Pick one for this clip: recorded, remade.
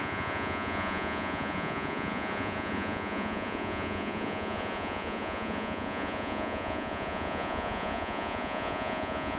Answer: remade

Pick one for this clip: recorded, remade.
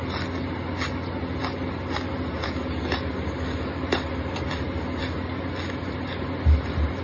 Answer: recorded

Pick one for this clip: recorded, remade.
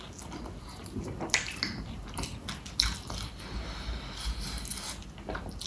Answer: recorded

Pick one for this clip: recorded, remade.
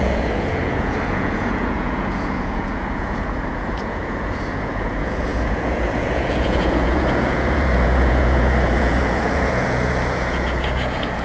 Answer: remade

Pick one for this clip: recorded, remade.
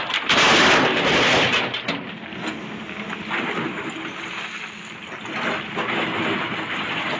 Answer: recorded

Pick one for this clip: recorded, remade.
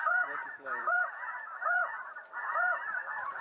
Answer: remade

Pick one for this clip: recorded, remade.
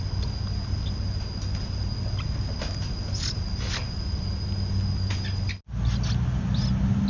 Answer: recorded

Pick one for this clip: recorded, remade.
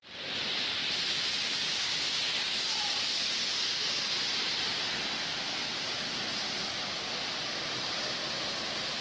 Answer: recorded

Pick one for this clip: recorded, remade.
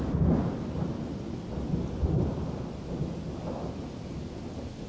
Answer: recorded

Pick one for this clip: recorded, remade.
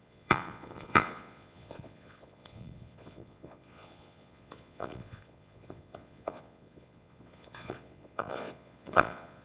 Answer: remade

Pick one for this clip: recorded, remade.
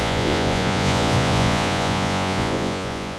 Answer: remade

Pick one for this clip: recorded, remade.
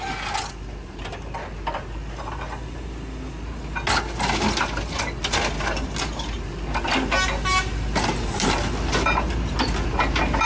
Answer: recorded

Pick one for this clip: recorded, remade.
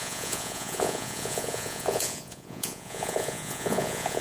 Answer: remade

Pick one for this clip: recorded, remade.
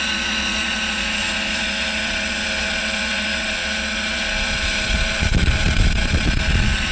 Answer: remade